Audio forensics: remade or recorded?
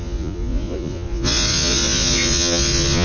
remade